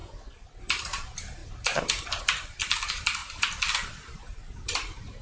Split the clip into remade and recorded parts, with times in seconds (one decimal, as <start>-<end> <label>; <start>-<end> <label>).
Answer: 0.0-0.6 recorded; 0.6-3.2 remade; 3.2-3.7 recorded; 3.7-5.2 remade